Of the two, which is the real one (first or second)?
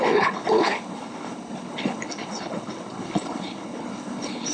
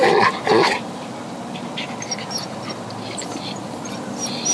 second